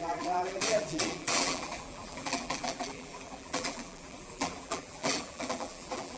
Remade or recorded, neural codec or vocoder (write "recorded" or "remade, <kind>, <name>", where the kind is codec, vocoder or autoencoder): remade, vocoder, BigVGAN v2